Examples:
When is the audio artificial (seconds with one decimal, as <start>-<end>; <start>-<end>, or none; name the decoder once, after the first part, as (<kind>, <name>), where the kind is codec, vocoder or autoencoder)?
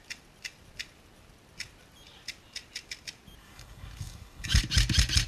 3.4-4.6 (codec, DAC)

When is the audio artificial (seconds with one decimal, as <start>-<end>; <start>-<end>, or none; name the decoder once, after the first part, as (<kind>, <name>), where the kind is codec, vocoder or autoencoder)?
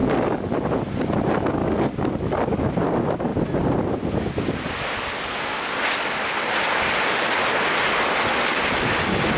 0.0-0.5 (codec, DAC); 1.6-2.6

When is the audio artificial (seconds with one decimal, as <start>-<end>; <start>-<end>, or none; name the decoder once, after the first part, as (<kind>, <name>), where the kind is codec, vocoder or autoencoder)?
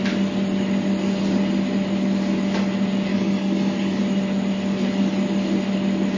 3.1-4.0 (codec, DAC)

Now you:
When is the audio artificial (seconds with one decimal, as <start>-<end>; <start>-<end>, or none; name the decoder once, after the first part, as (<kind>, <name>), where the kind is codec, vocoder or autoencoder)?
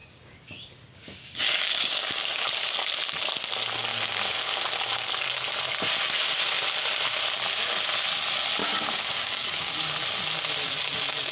0.0-2.7 (codec, DAC); 3.9-4.6; 8.6-9.7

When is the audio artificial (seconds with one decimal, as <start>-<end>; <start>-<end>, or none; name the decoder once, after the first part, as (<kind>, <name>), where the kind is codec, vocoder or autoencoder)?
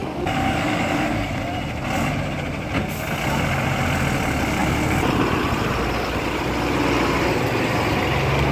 0.0-1.3 (codec, DAC)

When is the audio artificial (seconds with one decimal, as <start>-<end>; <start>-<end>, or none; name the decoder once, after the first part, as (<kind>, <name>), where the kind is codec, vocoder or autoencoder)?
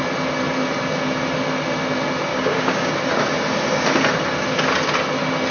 2.3-2.9 (codec, DAC)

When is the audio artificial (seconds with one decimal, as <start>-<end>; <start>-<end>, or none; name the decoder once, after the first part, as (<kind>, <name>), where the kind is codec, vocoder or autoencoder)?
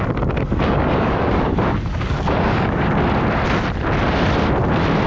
0.5-2.9 (codec, DAC)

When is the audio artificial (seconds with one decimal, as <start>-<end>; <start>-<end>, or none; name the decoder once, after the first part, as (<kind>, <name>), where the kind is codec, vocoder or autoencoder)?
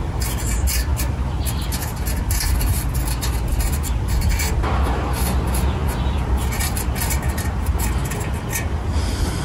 none